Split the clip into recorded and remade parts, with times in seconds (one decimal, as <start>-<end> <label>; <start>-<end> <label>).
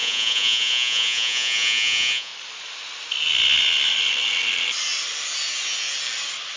0.0-2.3 remade; 2.3-6.6 recorded